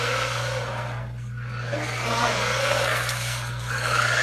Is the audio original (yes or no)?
no